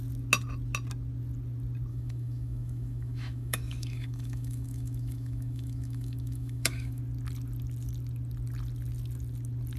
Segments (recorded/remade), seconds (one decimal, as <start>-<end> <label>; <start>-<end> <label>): 0.0-1.9 recorded; 1.9-7.0 remade; 7.0-9.8 recorded